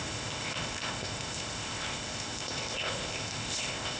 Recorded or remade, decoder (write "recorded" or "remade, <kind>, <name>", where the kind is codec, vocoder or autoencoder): remade, codec, ZipCodec